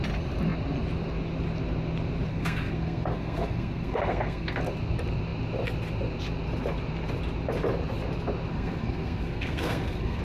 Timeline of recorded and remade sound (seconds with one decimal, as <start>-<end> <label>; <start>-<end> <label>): 0.0-2.3 recorded; 2.3-4.6 remade; 4.6-8.5 recorded; 8.5-10.2 remade